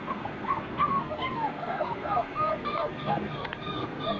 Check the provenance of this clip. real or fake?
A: fake